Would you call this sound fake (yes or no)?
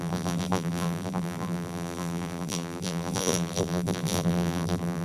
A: yes